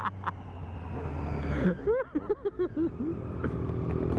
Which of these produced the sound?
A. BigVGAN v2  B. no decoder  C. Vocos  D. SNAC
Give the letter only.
B